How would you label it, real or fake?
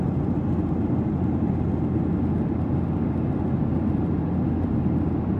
real